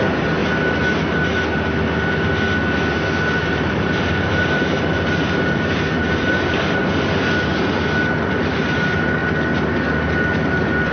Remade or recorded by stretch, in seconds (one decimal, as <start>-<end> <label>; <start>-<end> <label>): 0.0-0.4 remade; 0.4-3.5 recorded; 3.5-6.8 remade; 6.8-8.5 recorded; 8.5-9.2 remade; 9.2-9.9 recorded; 9.9-10.9 remade